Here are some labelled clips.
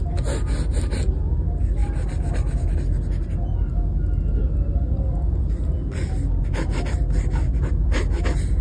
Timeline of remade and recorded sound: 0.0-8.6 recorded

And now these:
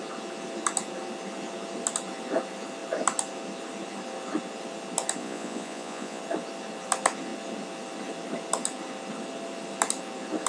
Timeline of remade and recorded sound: 0.0-5.2 recorded; 5.2-6.2 remade; 6.2-10.5 recorded

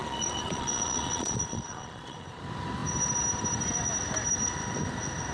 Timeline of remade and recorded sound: 0.0-2.4 remade; 2.4-5.3 recorded

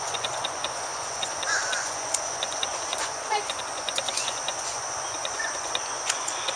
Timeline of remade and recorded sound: 0.0-6.6 remade